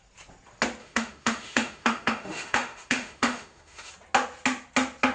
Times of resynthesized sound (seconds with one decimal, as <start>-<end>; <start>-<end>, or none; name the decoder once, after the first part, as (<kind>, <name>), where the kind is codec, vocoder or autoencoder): 0.8-3.9 (autoencoder, DAC-VAE)